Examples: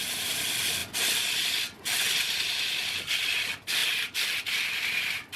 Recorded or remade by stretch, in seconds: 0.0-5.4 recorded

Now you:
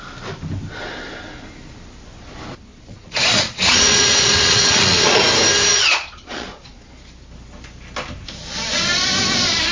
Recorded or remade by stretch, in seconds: 0.0-2.7 recorded; 2.7-5.2 remade; 5.2-5.7 recorded; 5.7-6.9 remade; 6.9-9.7 recorded

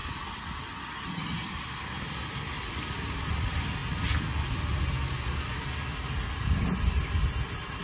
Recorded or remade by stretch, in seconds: 0.0-7.8 recorded